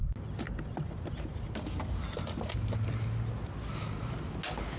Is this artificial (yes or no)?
no